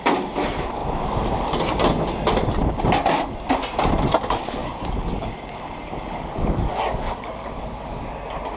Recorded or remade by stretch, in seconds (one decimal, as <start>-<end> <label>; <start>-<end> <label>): 0.0-4.6 recorded; 4.6-8.0 remade; 8.0-8.6 recorded